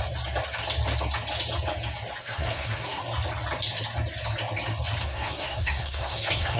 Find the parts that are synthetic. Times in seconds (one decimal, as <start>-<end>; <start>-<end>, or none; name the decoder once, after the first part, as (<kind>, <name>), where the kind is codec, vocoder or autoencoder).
2.2-3.0 (codec, SNAC); 5.0-6.6